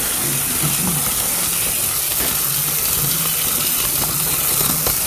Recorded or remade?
recorded